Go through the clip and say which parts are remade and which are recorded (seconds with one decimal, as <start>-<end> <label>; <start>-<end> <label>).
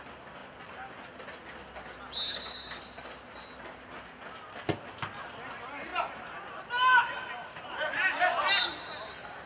0.0-9.5 recorded